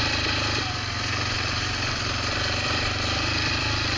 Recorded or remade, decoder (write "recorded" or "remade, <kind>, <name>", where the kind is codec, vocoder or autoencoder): remade, vocoder, BigVGAN v2